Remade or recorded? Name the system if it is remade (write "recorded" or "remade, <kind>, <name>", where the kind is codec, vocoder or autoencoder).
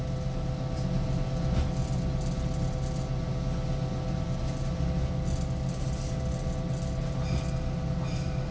recorded